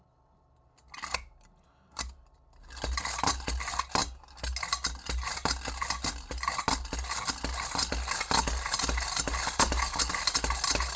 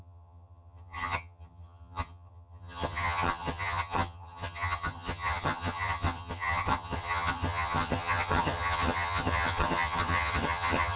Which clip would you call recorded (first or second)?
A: first